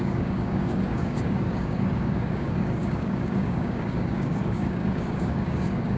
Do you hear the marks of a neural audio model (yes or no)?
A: yes